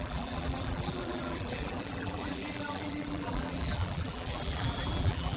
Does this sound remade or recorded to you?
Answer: remade